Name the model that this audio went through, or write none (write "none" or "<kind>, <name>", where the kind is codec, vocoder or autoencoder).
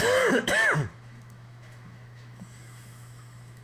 autoencoder, DAC-VAE